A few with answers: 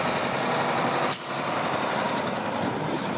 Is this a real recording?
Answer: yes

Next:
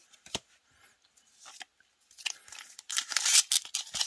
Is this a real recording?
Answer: yes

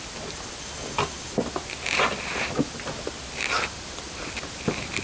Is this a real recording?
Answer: yes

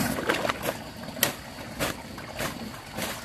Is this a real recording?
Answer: yes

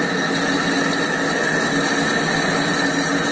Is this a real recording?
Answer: yes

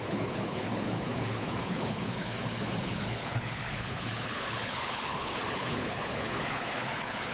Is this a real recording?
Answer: no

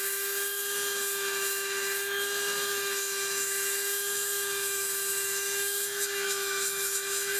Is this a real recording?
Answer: no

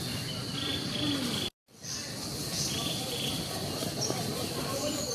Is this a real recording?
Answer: yes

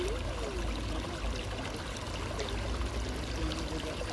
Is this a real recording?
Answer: yes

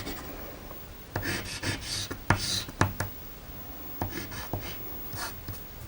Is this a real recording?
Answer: yes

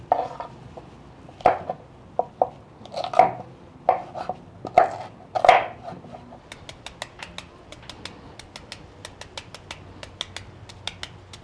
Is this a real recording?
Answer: yes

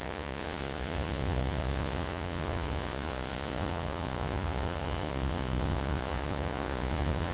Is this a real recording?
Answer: no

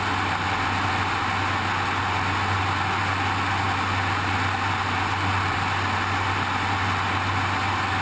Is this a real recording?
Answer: yes